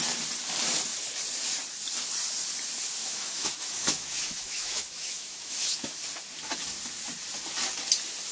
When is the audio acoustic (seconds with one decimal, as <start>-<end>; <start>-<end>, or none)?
0.0-3.0; 6.0-8.3